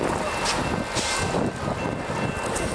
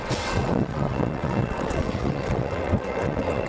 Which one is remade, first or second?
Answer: second